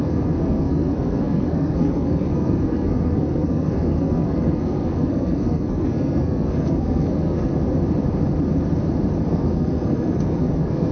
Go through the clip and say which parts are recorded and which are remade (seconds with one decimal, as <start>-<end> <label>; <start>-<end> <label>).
0.0-7.5 remade; 7.5-9.3 recorded; 9.3-10.9 remade